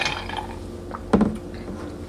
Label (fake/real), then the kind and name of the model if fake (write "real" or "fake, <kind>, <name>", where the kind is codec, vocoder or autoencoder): real